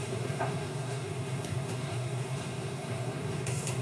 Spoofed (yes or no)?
yes